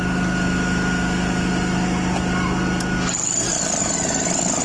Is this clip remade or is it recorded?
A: recorded